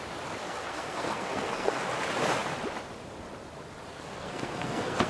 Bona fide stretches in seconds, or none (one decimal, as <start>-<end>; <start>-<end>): 0.0-0.4; 1.8-3.9